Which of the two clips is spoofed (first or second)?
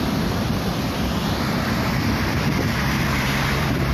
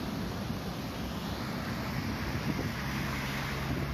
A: first